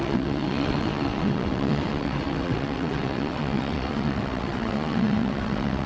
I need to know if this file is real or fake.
fake